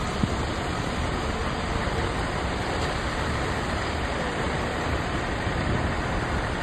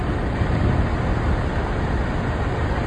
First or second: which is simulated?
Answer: first